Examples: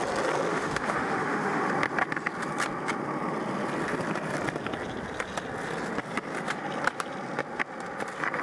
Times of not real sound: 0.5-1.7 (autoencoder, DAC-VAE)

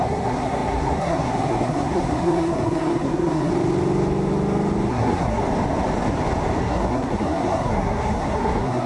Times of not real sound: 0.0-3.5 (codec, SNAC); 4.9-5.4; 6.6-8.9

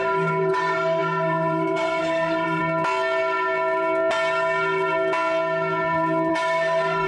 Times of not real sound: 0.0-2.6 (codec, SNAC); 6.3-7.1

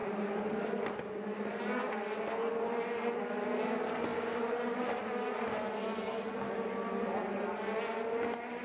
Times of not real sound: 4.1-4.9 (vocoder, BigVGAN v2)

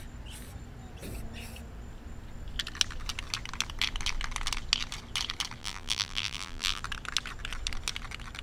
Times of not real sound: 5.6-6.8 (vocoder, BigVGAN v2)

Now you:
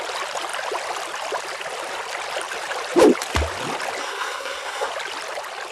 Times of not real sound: 4.0-4.9 (codec, SNAC)

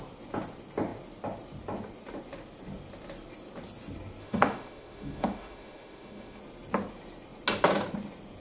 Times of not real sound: 4.2-6.4 (autoencoder, DAC-VAE)

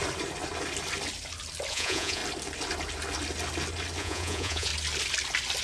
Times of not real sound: 1.7-2.2 (vocoder, Vocos); 4.0-4.7